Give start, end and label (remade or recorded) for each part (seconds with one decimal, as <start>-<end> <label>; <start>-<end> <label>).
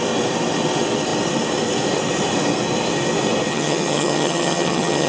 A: 0.0-3.5 recorded; 3.5-5.1 remade